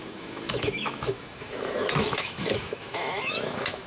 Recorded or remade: remade